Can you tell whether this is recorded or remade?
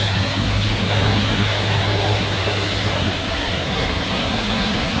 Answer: remade